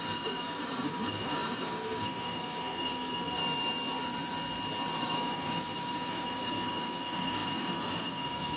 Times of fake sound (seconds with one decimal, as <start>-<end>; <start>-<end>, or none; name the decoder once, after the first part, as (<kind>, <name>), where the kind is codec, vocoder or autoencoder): 0.0-3.4 (codec, DAC); 5.0-8.6